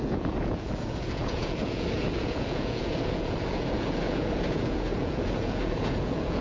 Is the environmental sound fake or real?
fake